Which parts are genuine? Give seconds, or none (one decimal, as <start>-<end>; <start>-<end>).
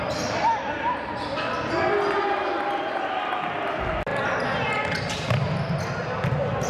0.0-6.7